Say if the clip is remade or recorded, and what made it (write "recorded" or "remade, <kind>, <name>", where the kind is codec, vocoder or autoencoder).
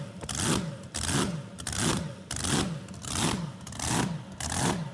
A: recorded